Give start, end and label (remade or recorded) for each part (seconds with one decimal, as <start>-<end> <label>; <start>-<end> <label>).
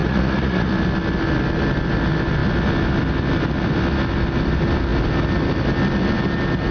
0.0-0.7 remade; 0.7-6.7 recorded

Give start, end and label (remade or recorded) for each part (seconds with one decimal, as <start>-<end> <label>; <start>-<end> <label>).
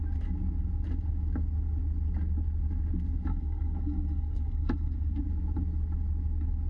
0.0-3.3 recorded; 3.3-5.2 remade; 5.2-6.7 recorded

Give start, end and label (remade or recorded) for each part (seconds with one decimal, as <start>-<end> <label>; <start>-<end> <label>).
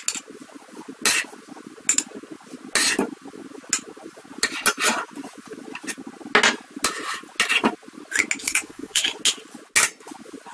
0.0-8.4 recorded; 8.4-9.1 remade; 9.1-10.5 recorded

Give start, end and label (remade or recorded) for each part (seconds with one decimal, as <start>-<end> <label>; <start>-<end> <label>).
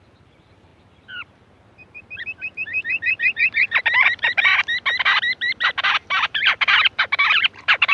0.0-4.5 remade; 4.5-5.2 recorded; 5.2-7.9 remade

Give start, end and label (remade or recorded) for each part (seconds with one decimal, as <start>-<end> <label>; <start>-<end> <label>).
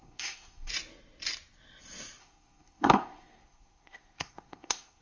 0.0-0.7 remade; 0.7-2.2 recorded; 2.2-5.0 remade